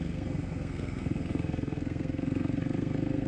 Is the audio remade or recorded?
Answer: remade